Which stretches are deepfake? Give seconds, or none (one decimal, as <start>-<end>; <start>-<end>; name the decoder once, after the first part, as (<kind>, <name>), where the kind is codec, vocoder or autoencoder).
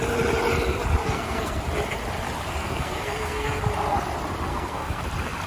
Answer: 1.0-1.6 (codec, SNAC); 2.6-3.6; 4.5-5.0